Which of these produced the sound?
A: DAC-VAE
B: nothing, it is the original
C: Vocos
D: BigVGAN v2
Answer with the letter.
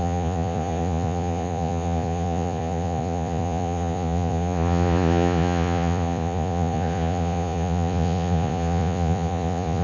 C